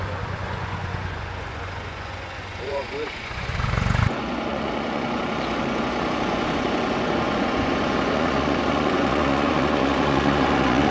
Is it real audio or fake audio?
fake